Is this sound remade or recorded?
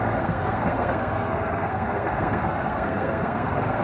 remade